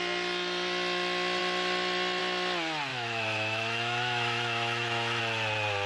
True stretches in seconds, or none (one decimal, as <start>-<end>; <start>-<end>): 0.0-2.9; 5.2-5.9